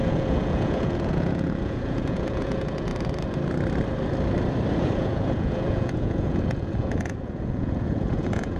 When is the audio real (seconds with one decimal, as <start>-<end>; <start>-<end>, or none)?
2.9-4.7